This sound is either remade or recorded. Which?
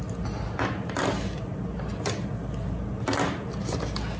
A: recorded